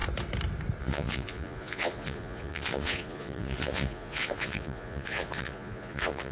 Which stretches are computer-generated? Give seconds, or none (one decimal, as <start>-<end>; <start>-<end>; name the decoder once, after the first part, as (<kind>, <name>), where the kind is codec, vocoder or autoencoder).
0.8-6.3 (vocoder, Vocos)